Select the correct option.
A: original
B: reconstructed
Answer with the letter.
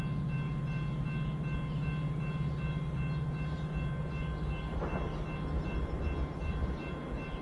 A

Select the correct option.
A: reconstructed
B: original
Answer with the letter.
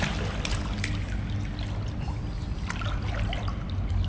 B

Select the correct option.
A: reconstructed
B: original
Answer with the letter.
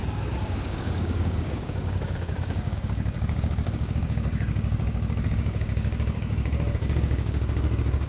A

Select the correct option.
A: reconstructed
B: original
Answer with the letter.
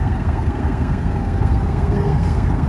A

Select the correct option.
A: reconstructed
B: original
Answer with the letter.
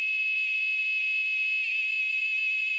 B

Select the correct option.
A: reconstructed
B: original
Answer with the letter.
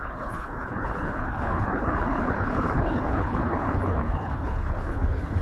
A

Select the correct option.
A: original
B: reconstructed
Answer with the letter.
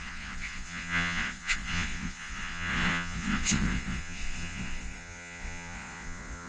B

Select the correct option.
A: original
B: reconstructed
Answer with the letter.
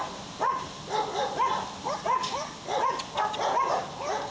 A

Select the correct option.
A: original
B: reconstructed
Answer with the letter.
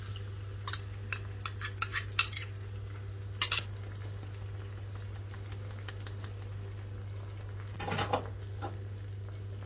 A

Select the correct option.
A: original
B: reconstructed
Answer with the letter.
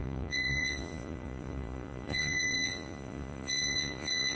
B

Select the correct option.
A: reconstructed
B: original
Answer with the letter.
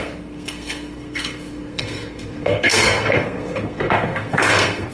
A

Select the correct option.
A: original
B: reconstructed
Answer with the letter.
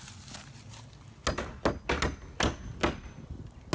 A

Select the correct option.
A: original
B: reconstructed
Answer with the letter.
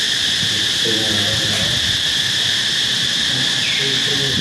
A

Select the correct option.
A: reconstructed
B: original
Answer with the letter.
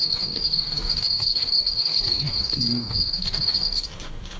A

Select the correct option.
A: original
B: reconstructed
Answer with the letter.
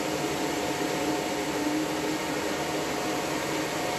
A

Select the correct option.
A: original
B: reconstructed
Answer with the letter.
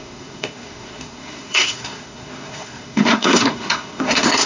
B